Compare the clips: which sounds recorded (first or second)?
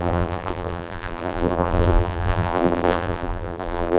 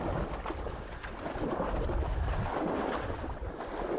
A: second